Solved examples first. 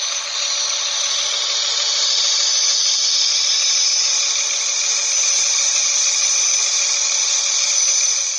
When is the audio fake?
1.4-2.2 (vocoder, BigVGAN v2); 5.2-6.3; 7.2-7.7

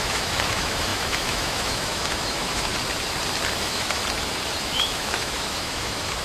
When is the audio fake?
0.0-2.7 (autoencoder, DAC-VAE); 3.6-4.0; 4.6-6.2

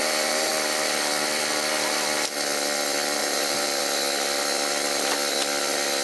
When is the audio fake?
0.0-0.5 (vocoder, BigVGAN v2); 3.2-3.8

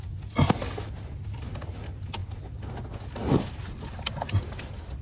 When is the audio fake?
none

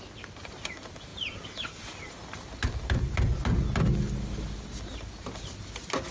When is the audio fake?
none

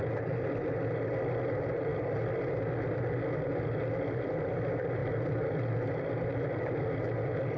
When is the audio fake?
none

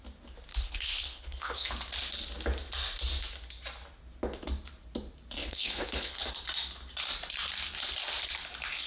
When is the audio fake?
0.5-1.7 (codec, HILCodec); 5.4-6.3